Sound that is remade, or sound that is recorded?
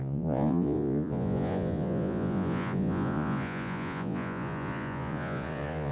remade